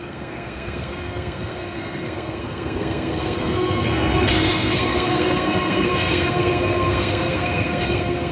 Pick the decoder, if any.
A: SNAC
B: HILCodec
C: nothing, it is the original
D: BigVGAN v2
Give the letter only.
A